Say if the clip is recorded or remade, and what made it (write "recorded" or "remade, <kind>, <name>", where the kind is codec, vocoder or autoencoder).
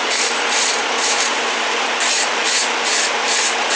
remade, vocoder, BigVGAN v2